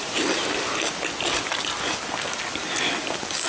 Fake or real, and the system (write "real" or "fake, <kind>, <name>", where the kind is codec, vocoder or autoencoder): real